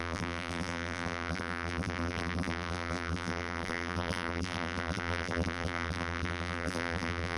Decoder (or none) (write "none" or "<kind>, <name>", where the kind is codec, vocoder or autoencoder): vocoder, BigVGAN v2